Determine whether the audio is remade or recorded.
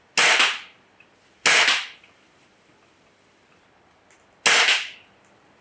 recorded